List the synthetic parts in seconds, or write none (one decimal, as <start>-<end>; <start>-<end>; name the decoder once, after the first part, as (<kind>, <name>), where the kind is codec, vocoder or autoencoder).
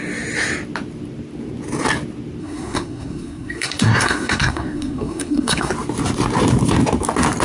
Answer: 2.4-5.7 (codec, SNAC)